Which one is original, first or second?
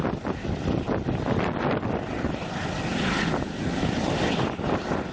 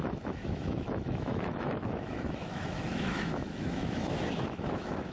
first